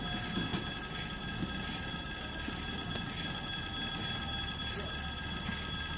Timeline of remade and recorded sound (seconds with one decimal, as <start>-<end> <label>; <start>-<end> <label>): 0.0-6.0 recorded